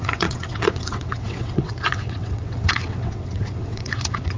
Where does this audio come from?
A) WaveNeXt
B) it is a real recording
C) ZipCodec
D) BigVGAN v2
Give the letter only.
A